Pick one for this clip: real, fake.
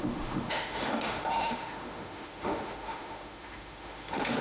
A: fake